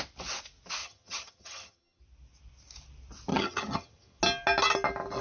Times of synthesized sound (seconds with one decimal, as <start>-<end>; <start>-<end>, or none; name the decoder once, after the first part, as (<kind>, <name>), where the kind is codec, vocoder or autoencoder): 0.8-2.0 (vocoder, HiFi-GAN); 3.3-4.2